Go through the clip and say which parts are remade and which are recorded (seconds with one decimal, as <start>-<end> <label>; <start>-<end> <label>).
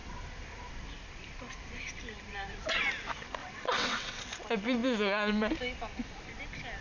0.0-3.4 recorded; 3.4-4.2 remade; 4.2-6.8 recorded